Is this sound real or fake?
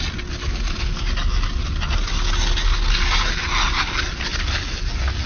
real